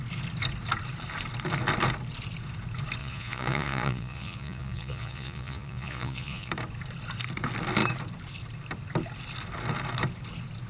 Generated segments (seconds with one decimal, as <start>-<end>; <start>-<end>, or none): 3.0-6.5